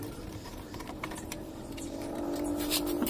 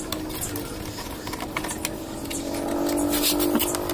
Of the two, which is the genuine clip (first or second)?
second